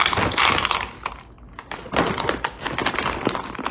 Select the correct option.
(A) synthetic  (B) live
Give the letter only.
B